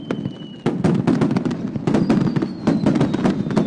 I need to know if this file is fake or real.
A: real